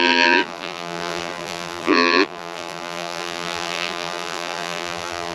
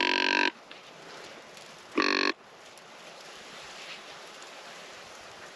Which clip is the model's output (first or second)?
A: first